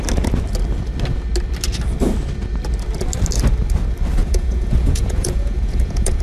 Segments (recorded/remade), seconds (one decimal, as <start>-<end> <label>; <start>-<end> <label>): 0.0-4.2 recorded; 4.2-6.2 remade